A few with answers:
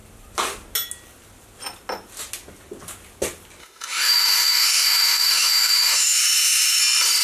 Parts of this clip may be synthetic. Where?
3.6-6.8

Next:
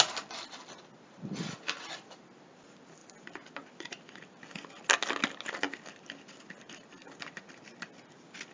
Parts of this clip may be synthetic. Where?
none

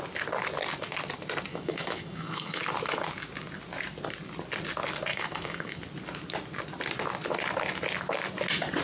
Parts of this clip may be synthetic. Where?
1.5-2.6; 5.1-5.8

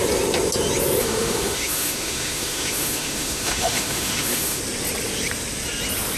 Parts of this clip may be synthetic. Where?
1.0-4.6

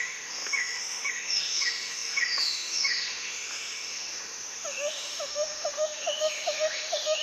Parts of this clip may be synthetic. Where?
0.0-7.2

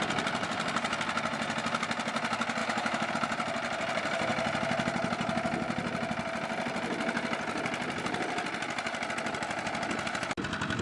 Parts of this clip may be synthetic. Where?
2.6-3.1